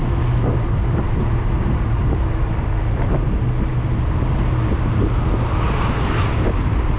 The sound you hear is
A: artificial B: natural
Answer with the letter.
B